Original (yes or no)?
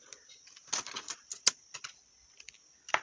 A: yes